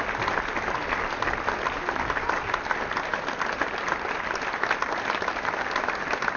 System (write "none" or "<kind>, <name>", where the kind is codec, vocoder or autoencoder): none